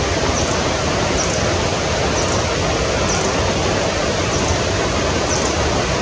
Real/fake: real